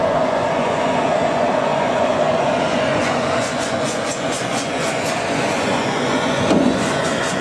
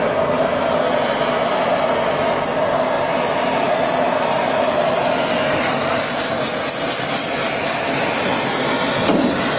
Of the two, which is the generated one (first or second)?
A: first